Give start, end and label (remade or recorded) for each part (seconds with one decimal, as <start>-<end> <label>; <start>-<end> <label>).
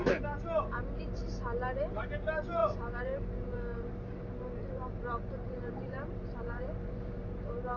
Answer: 0.0-1.2 remade; 1.2-1.8 recorded; 1.8-7.8 remade